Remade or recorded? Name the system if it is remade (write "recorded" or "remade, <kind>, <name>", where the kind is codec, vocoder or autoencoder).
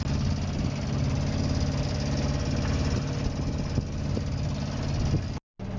recorded